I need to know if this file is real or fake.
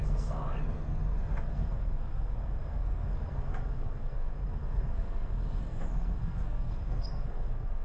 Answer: fake